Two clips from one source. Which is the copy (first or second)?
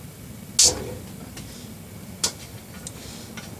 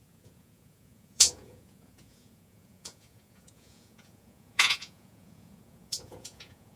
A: second